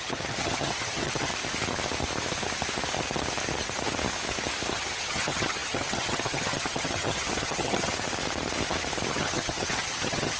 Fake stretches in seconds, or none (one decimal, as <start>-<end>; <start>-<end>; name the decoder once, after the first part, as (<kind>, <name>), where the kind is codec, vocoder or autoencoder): 0.0-1.3 (vocoder, HiFi-GAN); 4.7-7.9; 9.1-10.4